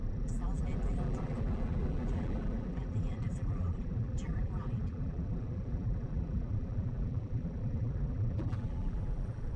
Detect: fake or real fake